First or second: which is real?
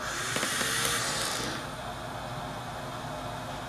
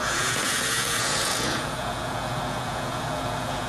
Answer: first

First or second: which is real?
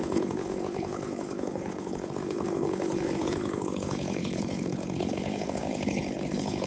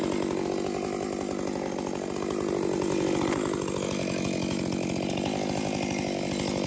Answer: second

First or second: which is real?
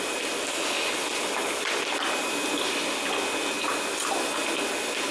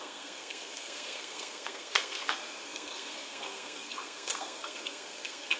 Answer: first